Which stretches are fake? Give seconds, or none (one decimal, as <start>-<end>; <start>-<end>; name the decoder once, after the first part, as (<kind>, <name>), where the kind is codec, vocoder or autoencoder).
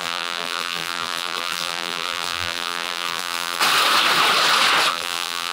0.0-3.6 (vocoder, BigVGAN v2); 4.9-5.5